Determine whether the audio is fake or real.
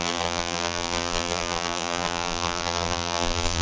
fake